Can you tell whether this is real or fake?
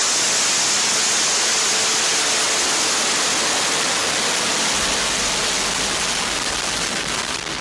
real